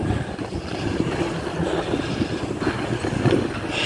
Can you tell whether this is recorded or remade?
recorded